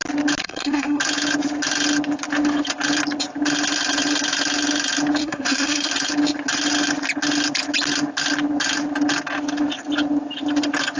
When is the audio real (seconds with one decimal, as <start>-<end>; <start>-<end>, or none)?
0.0-0.4; 1.0-5.2; 5.9-11.0